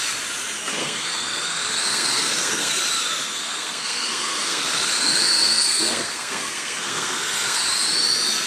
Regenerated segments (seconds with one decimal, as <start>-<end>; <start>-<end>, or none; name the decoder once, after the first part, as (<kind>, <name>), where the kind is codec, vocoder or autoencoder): 0.8-2.8 (codec, SNAC); 3.2-7.6